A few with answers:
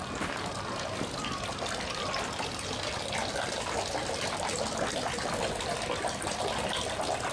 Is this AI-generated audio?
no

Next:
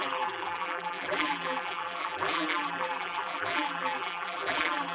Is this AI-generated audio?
yes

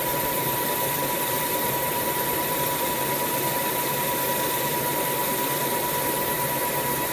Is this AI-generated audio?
yes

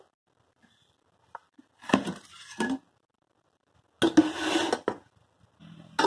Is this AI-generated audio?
no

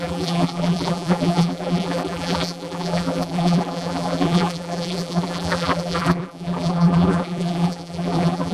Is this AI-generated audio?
yes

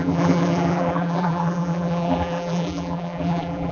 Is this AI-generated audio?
yes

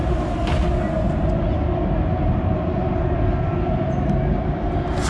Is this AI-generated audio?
no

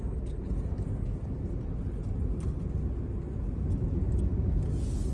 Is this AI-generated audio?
no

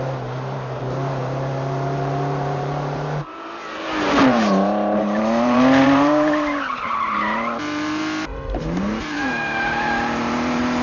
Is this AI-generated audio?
yes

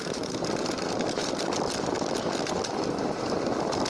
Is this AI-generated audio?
yes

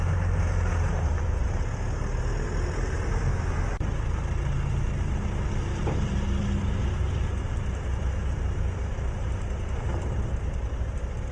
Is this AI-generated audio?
no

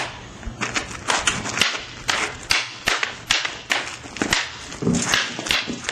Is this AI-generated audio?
no